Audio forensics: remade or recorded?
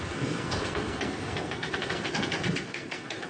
remade